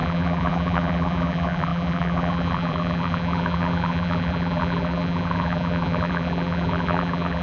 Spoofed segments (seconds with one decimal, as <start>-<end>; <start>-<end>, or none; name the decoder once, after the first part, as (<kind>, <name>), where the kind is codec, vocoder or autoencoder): 0.0-7.4 (vocoder, BigVGAN v2)